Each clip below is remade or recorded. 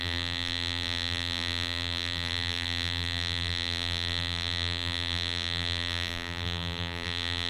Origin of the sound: remade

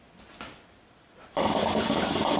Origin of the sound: recorded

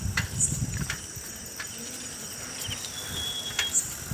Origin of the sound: recorded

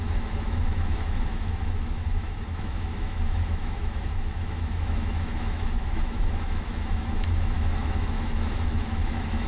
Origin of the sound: remade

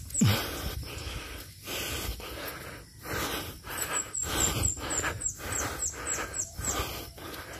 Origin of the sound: recorded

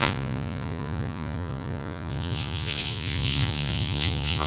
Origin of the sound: remade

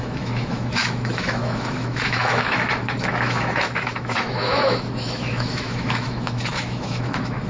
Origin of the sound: remade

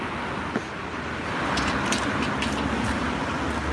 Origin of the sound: recorded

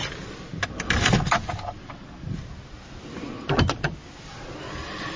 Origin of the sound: recorded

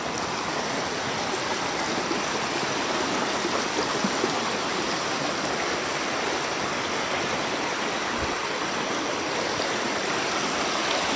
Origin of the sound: recorded